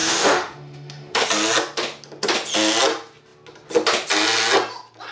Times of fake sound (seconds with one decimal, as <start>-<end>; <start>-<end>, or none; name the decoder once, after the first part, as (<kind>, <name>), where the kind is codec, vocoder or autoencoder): 0.0-1.3 (autoencoder, DAC-VAE)